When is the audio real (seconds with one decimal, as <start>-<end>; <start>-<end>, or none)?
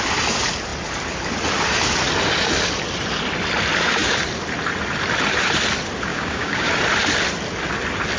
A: 0.0-6.1; 6.7-8.2